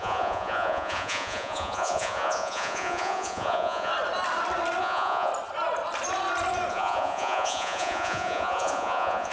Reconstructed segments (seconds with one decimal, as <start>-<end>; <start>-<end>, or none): 0.0-3.9; 4.8-5.3; 6.7-9.3